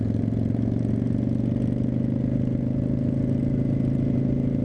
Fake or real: real